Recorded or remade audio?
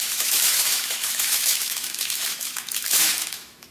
remade